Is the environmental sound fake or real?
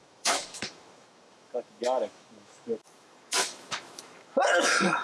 fake